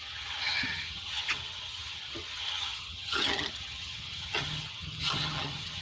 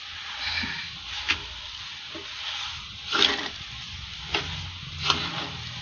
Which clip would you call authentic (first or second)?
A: second